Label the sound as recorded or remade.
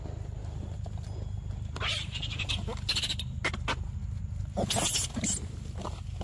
recorded